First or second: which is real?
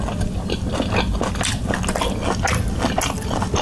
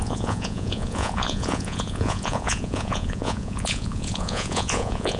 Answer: first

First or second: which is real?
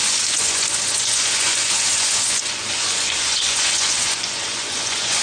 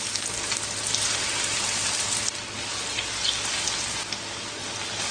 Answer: second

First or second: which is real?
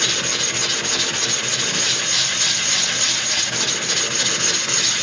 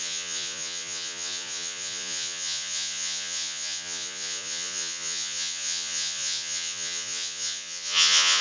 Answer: first